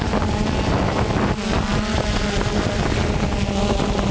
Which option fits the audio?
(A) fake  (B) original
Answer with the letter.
B